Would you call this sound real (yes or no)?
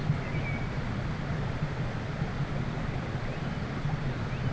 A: yes